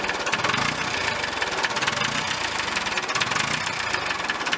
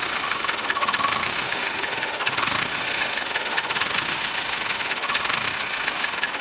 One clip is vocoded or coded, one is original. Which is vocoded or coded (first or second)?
second